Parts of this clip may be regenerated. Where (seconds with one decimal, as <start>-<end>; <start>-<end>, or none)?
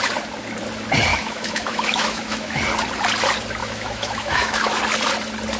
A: 1.1-2.6; 3.6-4.8